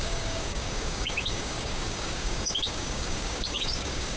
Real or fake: fake